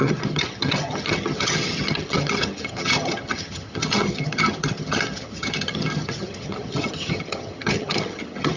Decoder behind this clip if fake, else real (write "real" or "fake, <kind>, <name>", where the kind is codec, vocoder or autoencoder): fake, vocoder, HiFi-GAN